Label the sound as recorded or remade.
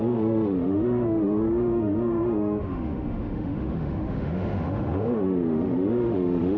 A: remade